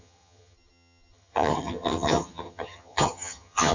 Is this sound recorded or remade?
remade